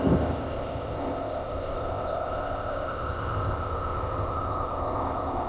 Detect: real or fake fake